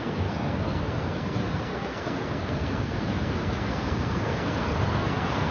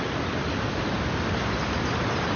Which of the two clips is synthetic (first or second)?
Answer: first